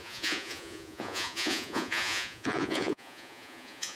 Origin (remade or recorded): remade